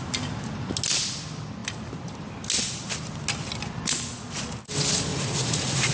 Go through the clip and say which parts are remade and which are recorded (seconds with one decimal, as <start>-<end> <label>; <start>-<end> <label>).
0.0-5.1 recorded; 5.1-5.9 remade